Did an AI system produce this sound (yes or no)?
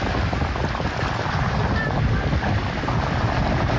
no